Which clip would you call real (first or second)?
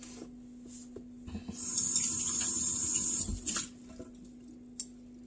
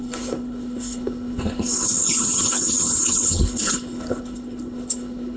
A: first